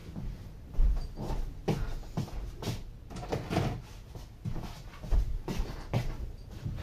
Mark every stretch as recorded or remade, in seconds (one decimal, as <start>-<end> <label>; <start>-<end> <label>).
0.0-1.2 recorded; 1.2-1.6 remade; 1.6-5.3 recorded; 5.3-6.8 remade